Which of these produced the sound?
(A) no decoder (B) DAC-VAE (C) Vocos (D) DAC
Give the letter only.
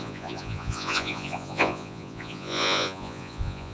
C